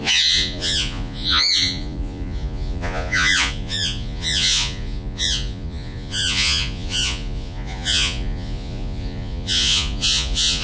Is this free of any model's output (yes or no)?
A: no